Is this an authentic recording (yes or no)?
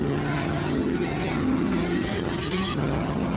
no